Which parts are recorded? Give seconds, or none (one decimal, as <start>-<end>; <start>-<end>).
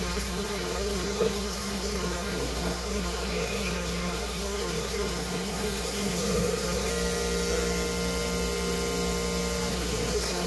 6.9-9.7